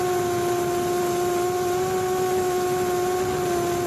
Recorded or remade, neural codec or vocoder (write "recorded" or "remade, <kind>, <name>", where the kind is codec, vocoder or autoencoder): recorded